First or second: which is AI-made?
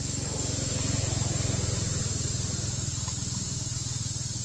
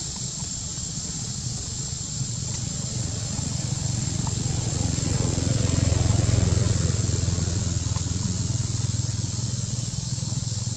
second